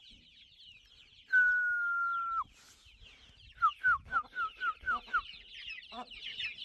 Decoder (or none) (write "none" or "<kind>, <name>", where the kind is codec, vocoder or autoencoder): none